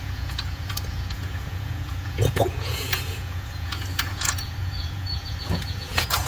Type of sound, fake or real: fake